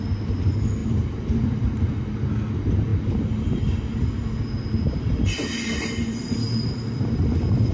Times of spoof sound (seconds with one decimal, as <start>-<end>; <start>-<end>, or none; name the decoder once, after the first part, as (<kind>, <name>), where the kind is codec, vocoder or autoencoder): none